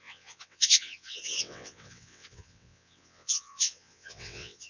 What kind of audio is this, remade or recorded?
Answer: remade